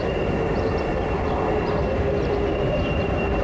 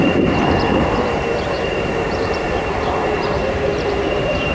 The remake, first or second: second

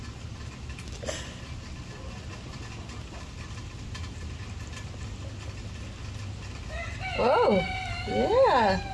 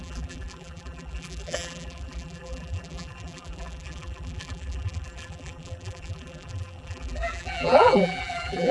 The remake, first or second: second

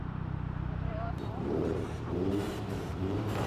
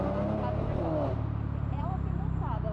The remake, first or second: first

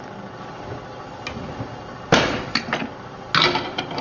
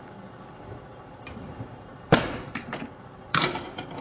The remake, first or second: second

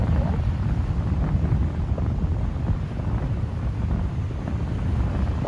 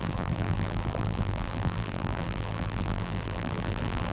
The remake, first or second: second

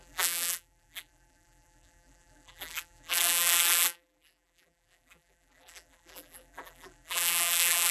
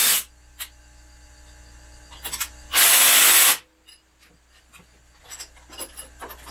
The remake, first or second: first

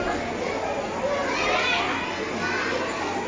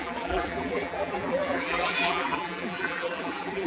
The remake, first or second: second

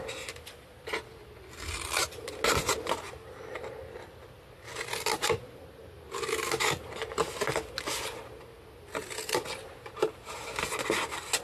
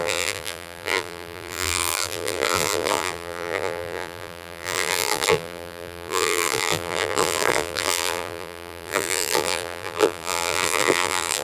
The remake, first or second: second